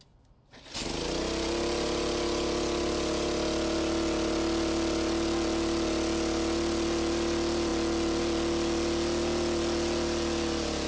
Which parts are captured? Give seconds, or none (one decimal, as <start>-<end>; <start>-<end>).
0.0-10.9